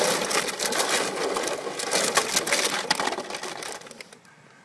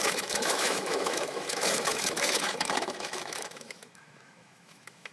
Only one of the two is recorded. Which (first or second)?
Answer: first